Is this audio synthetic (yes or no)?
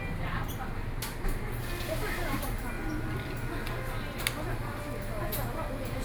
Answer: no